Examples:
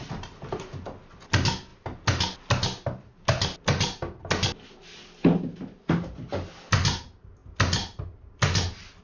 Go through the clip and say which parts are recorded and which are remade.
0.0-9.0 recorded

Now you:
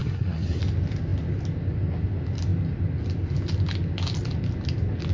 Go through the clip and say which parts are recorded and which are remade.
0.0-0.6 remade; 0.6-5.1 recorded